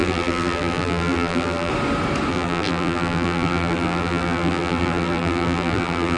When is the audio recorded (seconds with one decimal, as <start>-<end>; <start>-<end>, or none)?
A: 1.7-2.3